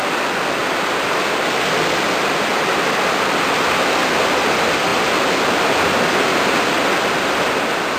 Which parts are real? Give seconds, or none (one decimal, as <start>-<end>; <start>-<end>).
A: 0.0-0.6; 1.2-2.5; 4.2-8.0